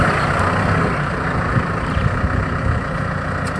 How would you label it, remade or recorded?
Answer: recorded